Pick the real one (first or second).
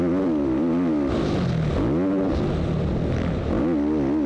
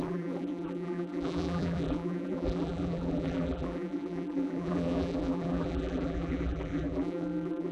first